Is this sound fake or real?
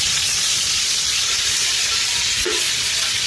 fake